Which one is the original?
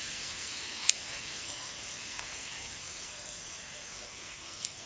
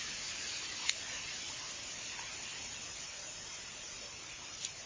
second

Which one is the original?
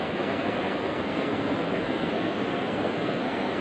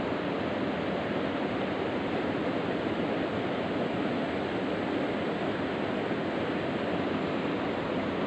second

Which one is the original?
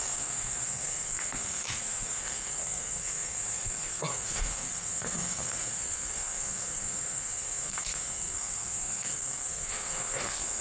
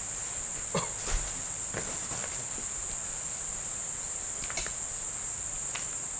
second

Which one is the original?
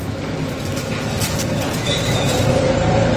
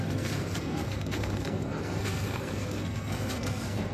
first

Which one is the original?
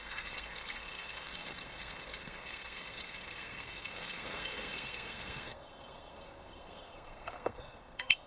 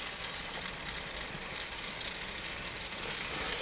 second